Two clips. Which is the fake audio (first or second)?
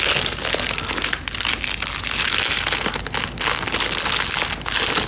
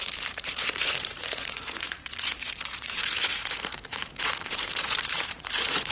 second